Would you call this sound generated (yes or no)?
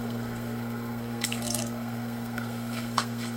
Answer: yes